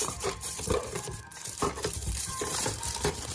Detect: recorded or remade remade